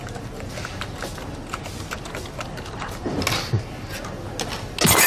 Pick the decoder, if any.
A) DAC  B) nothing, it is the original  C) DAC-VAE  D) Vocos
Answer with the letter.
B